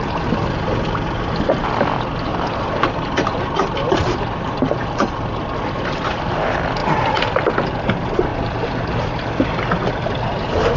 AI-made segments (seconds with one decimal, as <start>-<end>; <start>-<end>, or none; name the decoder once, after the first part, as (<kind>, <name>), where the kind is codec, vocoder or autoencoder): 2.3-5.3 (vocoder, BigVGAN v2); 6.8-7.4; 8.3-9.1